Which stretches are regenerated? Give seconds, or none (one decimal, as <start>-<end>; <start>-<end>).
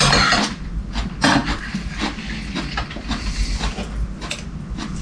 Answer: none